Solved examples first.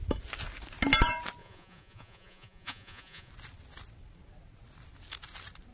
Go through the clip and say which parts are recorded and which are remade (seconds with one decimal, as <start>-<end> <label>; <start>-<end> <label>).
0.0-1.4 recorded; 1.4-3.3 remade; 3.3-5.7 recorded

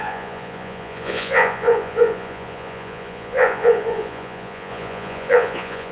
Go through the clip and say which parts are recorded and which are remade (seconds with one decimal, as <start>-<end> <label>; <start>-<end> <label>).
0.0-5.9 remade

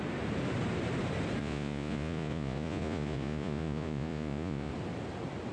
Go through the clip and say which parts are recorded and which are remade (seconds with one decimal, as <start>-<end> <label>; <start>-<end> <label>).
0.0-1.4 recorded; 1.4-4.7 remade; 4.7-5.5 recorded

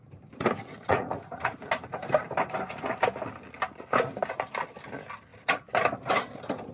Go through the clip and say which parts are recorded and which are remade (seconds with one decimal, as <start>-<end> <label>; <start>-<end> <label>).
0.0-0.9 recorded; 0.9-1.5 remade; 1.5-6.7 recorded

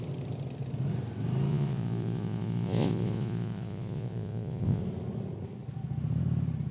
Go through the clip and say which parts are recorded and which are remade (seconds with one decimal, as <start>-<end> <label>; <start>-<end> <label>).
0.0-1.5 recorded; 1.5-4.8 remade; 4.8-6.7 recorded